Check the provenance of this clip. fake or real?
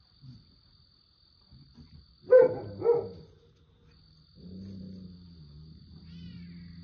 real